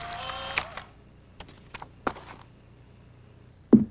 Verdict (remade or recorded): recorded